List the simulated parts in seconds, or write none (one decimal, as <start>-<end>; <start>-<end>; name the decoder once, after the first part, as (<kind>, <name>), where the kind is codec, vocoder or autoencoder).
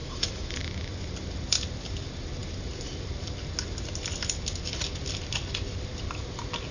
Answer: 0.0-0.6 (autoencoder, DAC-VAE)